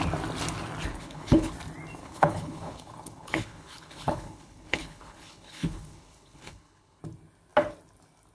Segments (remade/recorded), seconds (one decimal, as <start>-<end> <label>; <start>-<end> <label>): 0.0-0.9 recorded; 0.9-1.5 remade; 1.5-2.0 recorded; 2.0-7.0 remade; 7.0-8.3 recorded